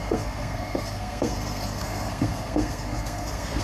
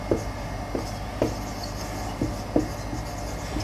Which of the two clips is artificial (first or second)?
first